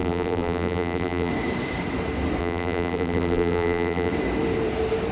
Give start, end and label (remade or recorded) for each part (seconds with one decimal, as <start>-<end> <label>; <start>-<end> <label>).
0.0-1.3 remade; 1.3-2.4 recorded; 2.4-4.1 remade; 4.1-5.1 recorded